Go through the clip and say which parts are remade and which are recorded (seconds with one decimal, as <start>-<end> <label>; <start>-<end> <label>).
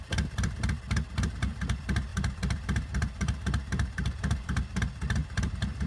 0.0-2.1 recorded; 2.1-4.8 remade; 4.8-5.2 recorded; 5.2-5.9 remade